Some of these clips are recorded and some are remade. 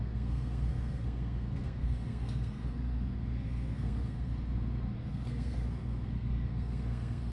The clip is remade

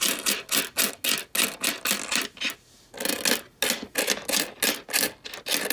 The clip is recorded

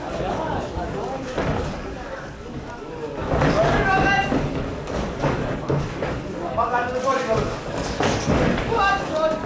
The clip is remade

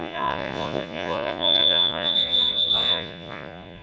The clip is remade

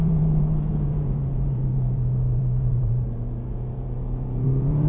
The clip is remade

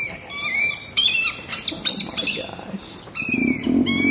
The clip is remade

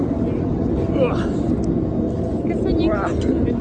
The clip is recorded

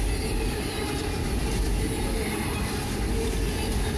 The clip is recorded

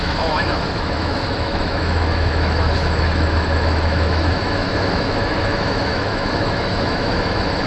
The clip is remade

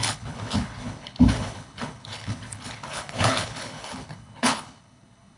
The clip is remade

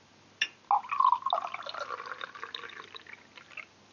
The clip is recorded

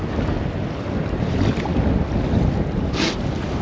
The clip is recorded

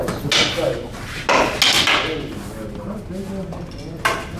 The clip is recorded